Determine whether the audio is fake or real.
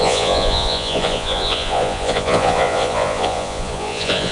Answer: fake